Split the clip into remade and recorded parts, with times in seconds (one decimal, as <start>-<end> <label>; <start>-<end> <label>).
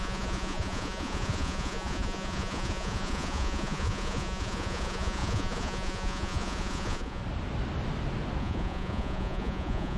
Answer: 0.0-7.2 remade; 7.2-8.4 recorded; 8.4-10.0 remade